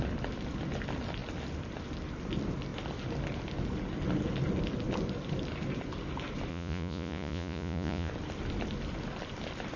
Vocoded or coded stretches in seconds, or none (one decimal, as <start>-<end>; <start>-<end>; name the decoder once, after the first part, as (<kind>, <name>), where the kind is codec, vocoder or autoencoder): 6.5-8.1 (vocoder, Vocos)